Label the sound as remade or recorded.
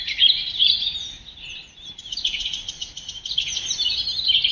remade